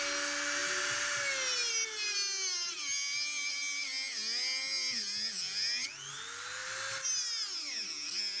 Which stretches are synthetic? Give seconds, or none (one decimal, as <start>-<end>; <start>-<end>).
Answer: none

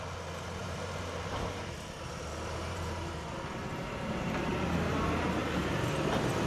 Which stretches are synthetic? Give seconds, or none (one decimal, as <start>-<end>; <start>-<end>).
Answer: 0.6-4.5; 5.4-5.9

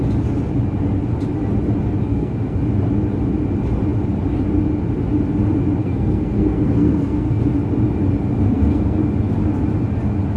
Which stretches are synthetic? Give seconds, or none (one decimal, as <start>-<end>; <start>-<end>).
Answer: 2.1-2.6; 5.8-7.4; 8.4-9.0

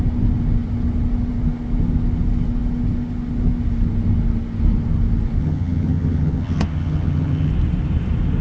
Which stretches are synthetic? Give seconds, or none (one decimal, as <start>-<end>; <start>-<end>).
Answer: 5.4-7.5

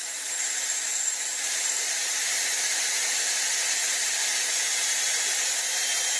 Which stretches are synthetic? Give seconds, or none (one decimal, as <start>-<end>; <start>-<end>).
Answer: 0.0-3.3

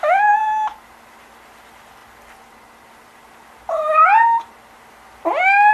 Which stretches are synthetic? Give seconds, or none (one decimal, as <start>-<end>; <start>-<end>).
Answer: none

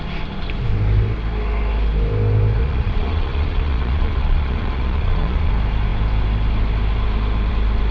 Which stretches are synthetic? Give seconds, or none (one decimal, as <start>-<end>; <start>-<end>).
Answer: 2.6-5.5

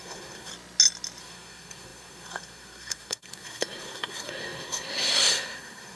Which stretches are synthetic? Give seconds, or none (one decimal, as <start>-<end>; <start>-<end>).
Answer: 0.0-0.5; 1.2-6.0